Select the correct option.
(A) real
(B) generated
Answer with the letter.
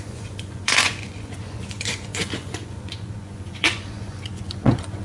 B